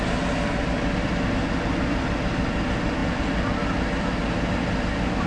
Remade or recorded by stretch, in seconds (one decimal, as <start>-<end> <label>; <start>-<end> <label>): 0.0-3.0 recorded; 3.0-3.6 remade; 3.6-5.3 recorded